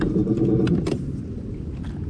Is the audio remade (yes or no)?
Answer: no